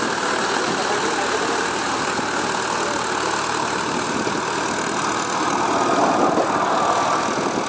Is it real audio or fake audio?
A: real